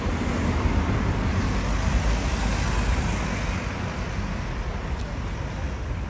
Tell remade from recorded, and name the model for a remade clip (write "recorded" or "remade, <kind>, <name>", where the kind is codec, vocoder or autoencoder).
recorded